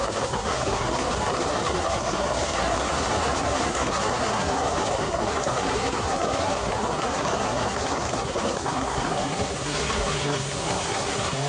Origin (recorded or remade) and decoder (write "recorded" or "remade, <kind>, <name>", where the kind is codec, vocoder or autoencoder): remade, codec, SNAC